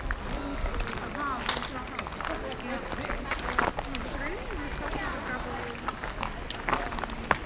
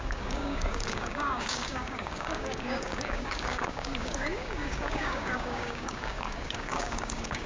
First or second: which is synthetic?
second